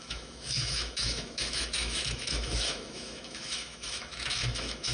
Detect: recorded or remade remade